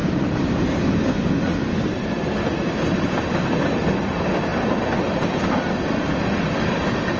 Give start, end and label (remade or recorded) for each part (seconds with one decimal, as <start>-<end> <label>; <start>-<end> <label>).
0.0-7.2 recorded